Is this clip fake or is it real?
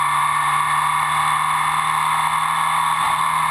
real